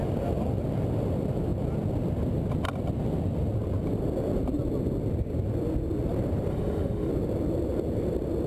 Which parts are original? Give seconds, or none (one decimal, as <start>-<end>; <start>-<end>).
0.0-6.5; 7.1-8.5